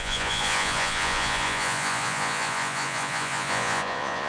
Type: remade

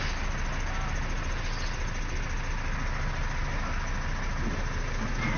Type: recorded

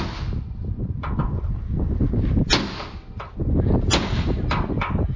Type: recorded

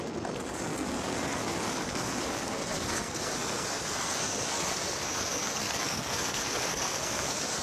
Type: remade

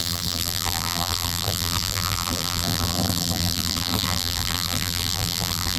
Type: remade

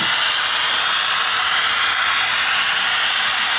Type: recorded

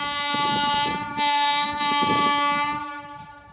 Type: remade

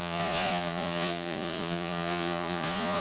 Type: remade